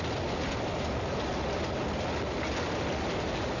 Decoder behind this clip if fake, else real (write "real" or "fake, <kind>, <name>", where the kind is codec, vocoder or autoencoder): real